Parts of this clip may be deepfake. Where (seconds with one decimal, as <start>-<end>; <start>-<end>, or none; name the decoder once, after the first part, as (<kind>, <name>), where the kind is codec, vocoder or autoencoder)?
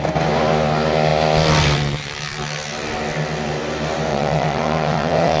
4.1-5.4 (vocoder, WaveNeXt)